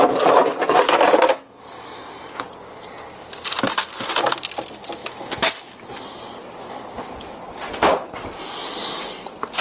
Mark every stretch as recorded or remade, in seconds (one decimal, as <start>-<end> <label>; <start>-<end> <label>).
0.0-1.3 recorded; 1.3-2.0 remade; 2.0-5.0 recorded; 5.0-5.9 remade; 5.9-9.6 recorded